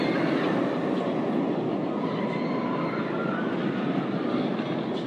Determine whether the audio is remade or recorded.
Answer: recorded